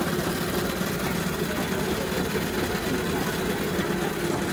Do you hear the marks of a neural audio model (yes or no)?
no